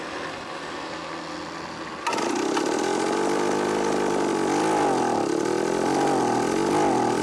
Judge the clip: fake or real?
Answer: real